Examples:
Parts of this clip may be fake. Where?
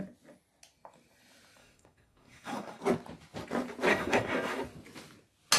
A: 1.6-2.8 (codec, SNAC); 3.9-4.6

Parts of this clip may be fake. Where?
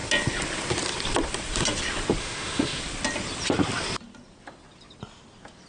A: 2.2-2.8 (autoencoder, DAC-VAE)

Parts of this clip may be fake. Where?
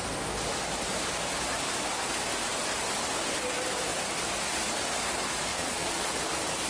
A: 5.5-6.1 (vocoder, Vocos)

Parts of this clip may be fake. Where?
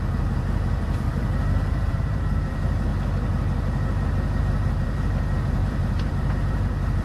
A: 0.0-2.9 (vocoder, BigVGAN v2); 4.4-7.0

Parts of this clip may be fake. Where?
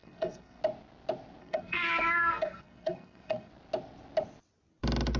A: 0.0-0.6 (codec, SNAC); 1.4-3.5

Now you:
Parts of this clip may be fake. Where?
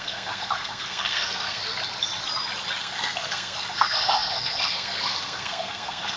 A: 0.0-1.6 (codec, SNAC); 2.8-6.2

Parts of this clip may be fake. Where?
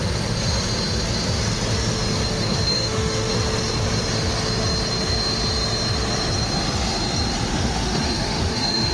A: 2.3-3.3 (autoencoder, DAC-VAE); 7.5-8.9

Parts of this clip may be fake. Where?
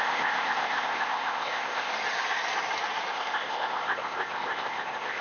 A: 0.0-1.9 (codec, ZipCodec); 3.1-5.2